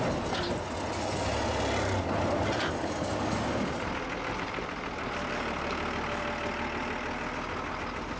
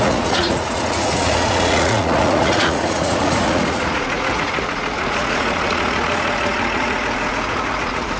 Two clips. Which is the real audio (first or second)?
first